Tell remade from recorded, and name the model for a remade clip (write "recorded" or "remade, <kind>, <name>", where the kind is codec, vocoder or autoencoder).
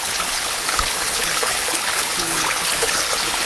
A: remade, codec, HILCodec